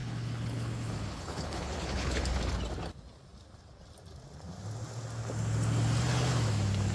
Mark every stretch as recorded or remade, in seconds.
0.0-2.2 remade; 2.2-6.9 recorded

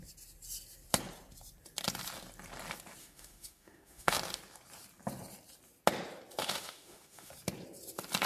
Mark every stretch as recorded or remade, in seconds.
0.0-3.0 recorded; 3.0-4.2 remade; 4.2-6.4 recorded; 6.4-7.3 remade; 7.3-8.3 recorded